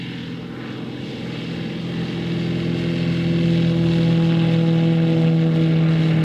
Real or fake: real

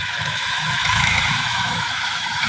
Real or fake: fake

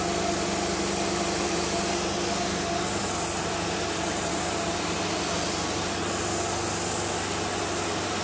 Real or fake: real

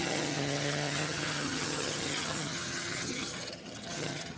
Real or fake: fake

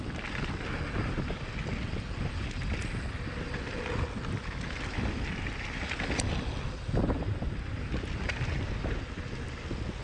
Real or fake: real